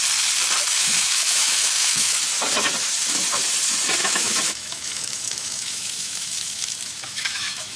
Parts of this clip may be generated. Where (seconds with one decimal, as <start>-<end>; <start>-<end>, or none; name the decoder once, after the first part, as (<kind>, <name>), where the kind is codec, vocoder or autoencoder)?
0.7-2.2 (autoencoder, DAC-VAE); 4.0-7.8

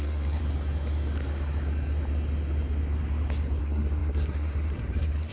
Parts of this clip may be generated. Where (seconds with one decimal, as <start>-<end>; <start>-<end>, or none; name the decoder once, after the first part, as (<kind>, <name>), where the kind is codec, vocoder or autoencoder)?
0.0-0.4 (codec, SNAC); 3.6-5.3

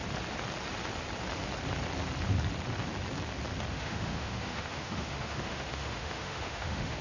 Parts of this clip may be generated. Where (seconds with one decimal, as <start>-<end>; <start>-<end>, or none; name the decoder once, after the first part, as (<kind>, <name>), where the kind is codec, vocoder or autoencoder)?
3.7-7.0 (autoencoder, DAC-VAE)

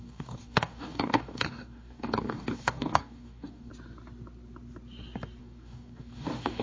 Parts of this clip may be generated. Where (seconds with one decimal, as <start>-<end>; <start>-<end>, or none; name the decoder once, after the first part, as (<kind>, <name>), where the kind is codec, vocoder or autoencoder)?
0.0-3.7 (codec, DAC); 5.4-6.6